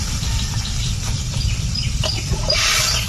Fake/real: fake